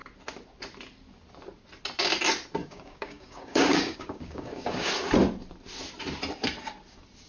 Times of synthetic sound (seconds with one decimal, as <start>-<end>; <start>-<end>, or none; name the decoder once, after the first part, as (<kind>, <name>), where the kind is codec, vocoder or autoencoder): 2.6-4.9 (codec, DAC)